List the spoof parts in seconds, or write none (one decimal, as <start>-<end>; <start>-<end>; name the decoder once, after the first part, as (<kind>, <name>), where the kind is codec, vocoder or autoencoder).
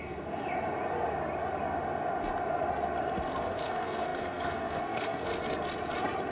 0.0-0.4 (codec, SNAC); 3.3-5.4